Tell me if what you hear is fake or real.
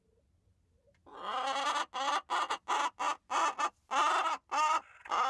real